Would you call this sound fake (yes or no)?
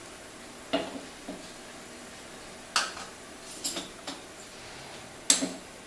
no